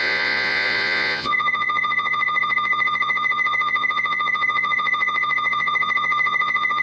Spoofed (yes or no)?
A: yes